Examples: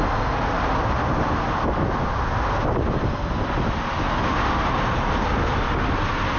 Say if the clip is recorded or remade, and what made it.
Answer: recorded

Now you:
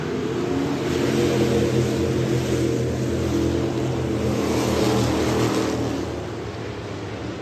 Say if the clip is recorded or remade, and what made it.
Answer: recorded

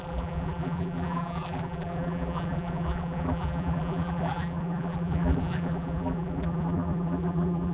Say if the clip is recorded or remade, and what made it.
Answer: remade, vocoder, BigVGAN v2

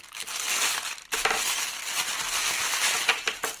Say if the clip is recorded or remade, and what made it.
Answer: remade, vocoder, BigVGAN v2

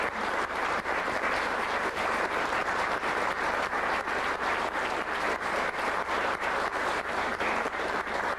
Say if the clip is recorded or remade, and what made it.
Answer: remade, vocoder, BigVGAN v2